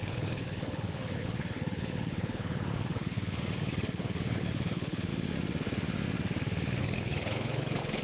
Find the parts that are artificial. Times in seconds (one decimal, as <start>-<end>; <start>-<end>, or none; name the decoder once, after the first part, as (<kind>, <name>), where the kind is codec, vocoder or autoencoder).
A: 0.0-5.1 (codec, HILCodec); 6.8-8.0